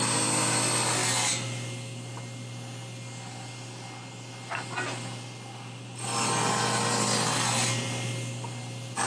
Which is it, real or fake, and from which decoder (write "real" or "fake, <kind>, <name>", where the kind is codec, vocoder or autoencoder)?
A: real